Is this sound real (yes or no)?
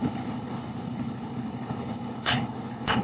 no